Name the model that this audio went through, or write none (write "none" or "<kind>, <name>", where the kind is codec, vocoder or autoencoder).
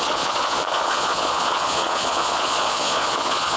vocoder, Vocos